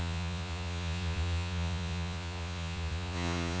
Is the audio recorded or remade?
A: remade